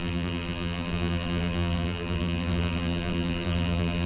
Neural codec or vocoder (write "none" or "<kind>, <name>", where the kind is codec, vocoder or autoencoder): vocoder, BigVGAN v2